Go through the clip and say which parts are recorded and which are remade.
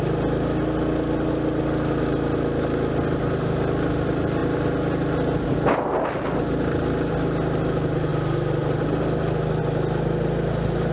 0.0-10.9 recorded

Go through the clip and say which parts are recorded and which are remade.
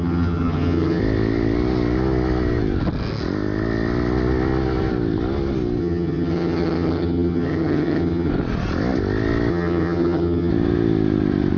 0.0-1.0 remade; 1.0-5.8 recorded; 5.8-8.3 remade; 8.3-9.5 recorded; 9.5-10.5 remade; 10.5-11.6 recorded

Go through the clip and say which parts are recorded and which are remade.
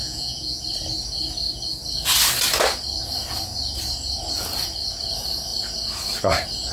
0.0-0.6 remade; 0.6-6.7 recorded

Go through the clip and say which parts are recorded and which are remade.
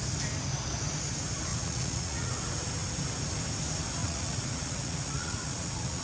0.0-1.5 recorded; 1.5-2.3 remade; 2.3-4.0 recorded; 4.0-6.0 remade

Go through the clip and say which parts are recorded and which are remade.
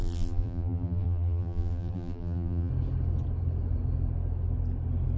0.0-2.7 remade; 2.7-5.2 recorded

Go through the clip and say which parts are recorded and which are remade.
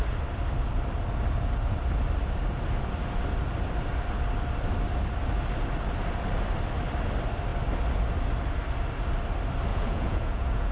0.0-9.7 recorded; 9.7-10.7 remade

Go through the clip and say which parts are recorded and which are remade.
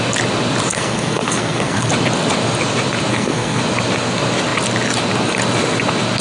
0.0-0.7 recorded; 0.7-1.9 remade; 1.9-3.1 recorded; 3.1-3.6 remade; 3.6-6.2 recorded